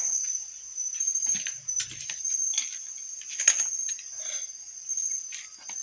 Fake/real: fake